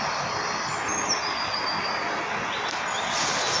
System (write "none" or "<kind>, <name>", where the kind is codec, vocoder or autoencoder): none